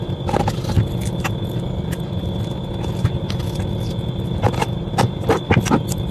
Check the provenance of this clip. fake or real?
real